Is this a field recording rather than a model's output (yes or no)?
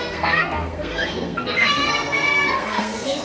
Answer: no